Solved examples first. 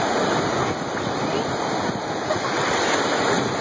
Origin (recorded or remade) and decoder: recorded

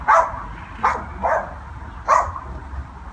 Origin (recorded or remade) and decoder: recorded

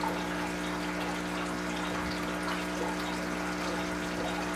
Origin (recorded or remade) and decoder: recorded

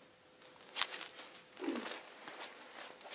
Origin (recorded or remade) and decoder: recorded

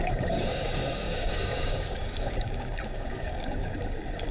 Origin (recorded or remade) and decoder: remade, codec, DAC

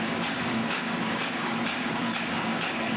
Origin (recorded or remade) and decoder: remade, codec, DAC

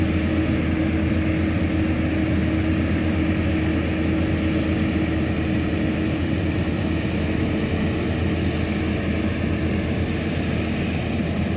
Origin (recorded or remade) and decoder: recorded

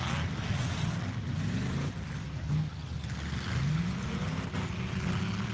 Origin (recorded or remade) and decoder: recorded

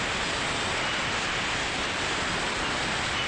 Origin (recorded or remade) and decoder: recorded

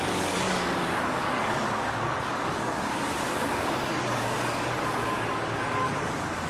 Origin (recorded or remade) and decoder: remade, codec, DAC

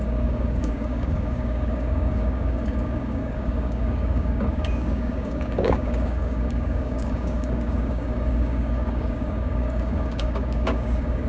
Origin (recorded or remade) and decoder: remade, codec, DAC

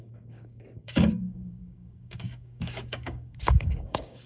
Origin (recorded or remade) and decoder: remade, codec, DAC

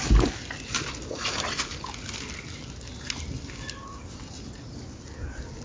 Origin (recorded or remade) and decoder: recorded